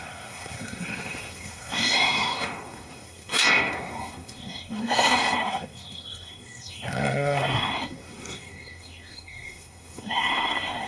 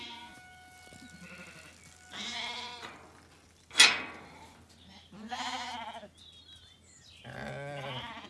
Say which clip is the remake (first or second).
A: first